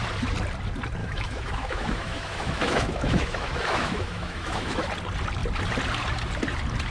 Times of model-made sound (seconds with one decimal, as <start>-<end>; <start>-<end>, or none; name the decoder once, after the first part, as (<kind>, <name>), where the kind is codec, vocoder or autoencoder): 1.0-4.9 (autoencoder, DAC-VAE)